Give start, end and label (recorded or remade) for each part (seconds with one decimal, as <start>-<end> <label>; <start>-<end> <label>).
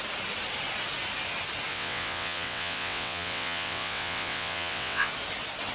0.0-1.7 recorded; 1.7-5.1 remade; 5.1-5.7 recorded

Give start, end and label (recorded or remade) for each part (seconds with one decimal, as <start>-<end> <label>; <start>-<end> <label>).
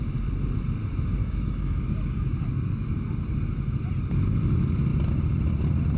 0.0-1.2 recorded; 1.2-2.9 remade; 2.9-6.0 recorded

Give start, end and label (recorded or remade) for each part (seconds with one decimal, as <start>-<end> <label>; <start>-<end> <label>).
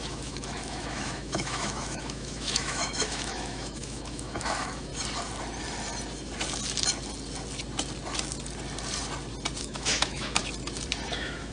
0.0-4.9 remade; 4.9-9.6 recorded; 9.6-10.4 remade; 10.4-11.1 recorded; 11.1-11.5 remade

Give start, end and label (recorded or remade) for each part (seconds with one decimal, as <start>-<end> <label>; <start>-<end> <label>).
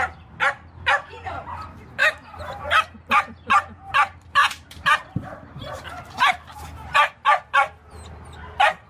0.0-2.0 recorded; 2.0-2.6 remade; 2.6-4.4 recorded; 4.4-5.8 remade; 5.8-8.9 recorded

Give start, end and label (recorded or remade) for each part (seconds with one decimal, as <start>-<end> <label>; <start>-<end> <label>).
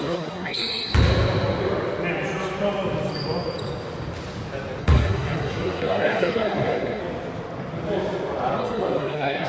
0.0-0.9 remade; 0.9-4.8 recorded; 4.8-7.0 remade; 7.0-8.6 recorded; 8.6-9.5 remade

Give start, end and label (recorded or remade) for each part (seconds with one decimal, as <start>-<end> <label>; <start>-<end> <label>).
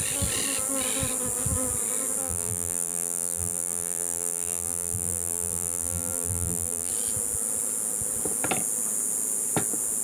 0.0-2.2 recorded; 2.2-6.9 remade; 6.9-10.0 recorded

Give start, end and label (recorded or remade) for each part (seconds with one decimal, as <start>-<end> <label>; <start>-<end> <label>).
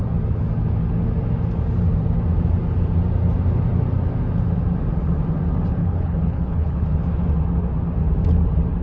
0.0-5.8 recorded; 5.8-7.0 remade; 7.0-8.8 recorded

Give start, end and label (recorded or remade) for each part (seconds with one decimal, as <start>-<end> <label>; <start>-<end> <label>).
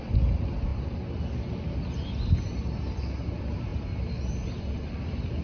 0.0-5.4 recorded